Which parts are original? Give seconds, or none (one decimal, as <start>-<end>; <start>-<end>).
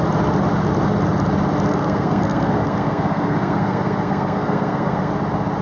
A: 0.0-1.7; 5.1-5.6